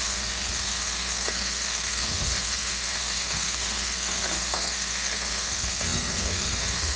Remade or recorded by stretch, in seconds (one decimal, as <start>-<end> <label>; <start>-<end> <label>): 0.0-7.0 remade